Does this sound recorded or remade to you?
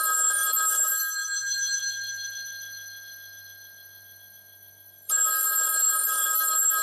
remade